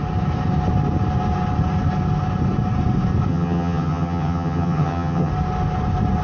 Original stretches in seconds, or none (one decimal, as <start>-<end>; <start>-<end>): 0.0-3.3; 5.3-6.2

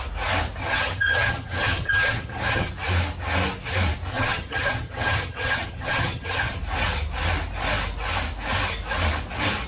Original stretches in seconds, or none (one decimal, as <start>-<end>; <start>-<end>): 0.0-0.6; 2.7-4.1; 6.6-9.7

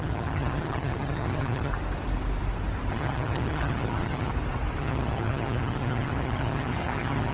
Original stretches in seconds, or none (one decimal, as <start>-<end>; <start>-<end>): 1.7-2.9; 4.3-4.8

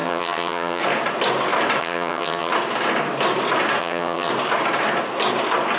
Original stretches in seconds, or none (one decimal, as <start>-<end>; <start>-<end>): 0.8-1.8; 2.5-3.8; 4.3-5.8

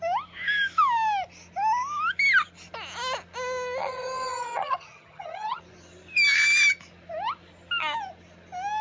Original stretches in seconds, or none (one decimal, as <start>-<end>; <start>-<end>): 0.0-3.8; 5.6-8.8

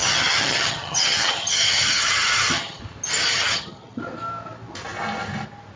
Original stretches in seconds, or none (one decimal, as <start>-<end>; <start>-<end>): 2.8-3.3; 4.0-5.8

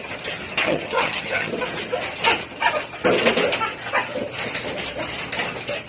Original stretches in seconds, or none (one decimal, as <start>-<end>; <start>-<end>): 0.0-0.6; 1.5-5.9

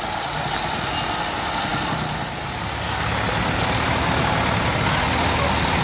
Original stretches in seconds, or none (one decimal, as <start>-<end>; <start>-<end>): 0.0-5.8